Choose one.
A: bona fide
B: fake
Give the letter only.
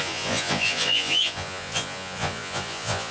B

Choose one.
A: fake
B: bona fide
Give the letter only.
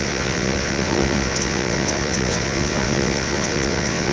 A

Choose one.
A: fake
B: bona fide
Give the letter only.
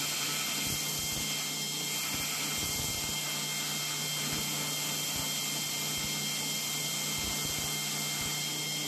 B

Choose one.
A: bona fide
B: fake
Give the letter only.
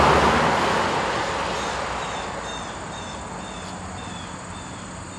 A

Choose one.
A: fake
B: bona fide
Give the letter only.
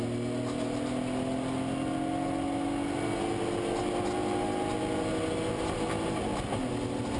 B